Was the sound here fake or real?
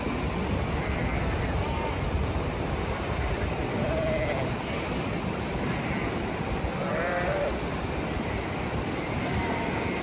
fake